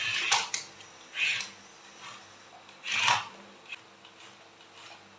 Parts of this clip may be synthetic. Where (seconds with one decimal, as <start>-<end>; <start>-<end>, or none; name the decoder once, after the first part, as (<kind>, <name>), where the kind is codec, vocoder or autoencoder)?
none